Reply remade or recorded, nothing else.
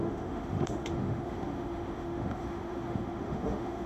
remade